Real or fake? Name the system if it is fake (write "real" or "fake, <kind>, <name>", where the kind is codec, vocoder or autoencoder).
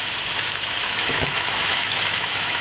fake, autoencoder, DAC-VAE